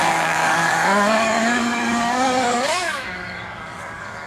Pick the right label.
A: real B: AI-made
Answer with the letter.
B